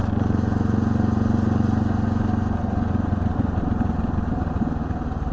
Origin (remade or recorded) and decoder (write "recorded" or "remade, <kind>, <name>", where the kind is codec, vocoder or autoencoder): recorded